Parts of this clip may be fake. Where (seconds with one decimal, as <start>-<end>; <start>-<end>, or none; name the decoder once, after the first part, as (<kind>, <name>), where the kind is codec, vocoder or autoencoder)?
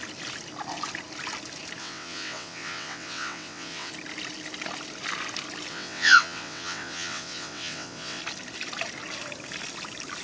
1.8-3.9 (vocoder, WaveNeXt); 5.7-8.2